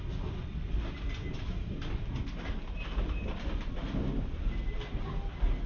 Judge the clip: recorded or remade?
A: recorded